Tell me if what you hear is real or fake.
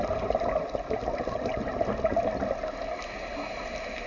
real